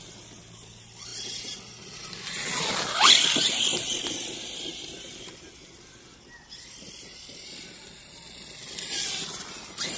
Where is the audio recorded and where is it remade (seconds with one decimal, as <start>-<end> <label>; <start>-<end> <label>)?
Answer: 0.0-10.0 recorded

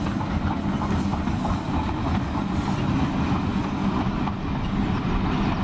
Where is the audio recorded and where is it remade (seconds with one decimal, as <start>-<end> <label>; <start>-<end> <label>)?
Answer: 0.0-1.1 recorded; 1.1-2.0 remade; 2.0-5.6 recorded